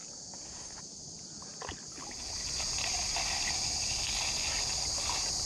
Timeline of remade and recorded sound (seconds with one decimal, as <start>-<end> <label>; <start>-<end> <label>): 0.0-5.5 recorded